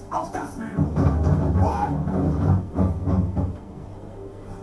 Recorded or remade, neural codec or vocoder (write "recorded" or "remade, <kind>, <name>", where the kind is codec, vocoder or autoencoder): remade, codec, SNAC